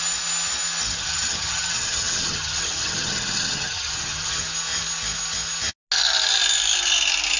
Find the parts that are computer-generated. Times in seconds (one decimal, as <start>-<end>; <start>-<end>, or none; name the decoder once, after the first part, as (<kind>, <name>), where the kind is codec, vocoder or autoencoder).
1.0-4.4 (vocoder, HiFi-GAN)